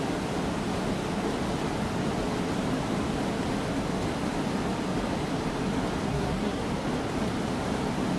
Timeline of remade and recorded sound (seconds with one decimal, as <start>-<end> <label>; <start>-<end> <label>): 0.0-6.1 recorded; 6.1-6.6 remade; 6.6-8.2 recorded